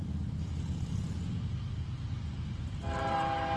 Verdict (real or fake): real